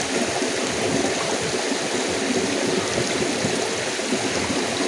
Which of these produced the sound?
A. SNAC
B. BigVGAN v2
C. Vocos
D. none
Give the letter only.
D